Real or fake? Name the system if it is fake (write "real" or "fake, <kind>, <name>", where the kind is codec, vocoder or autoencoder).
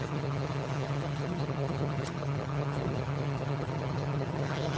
fake, vocoder, HiFi-GAN